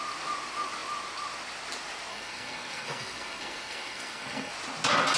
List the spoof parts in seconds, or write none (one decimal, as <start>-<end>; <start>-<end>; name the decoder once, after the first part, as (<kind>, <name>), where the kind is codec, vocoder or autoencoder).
2.1-4.5 (codec, SNAC)